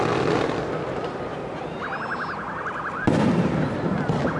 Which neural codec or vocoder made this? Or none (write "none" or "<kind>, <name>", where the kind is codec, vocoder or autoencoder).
none